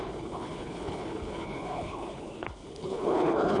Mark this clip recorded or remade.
remade